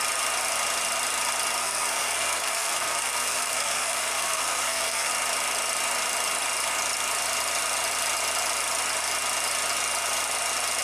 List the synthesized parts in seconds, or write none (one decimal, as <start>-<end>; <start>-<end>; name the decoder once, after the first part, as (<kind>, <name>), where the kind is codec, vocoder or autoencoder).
1.6-5.1 (codec, SNAC)